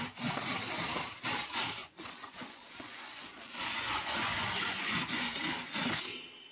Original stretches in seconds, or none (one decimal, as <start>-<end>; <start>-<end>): 0.0-1.8; 5.4-6.5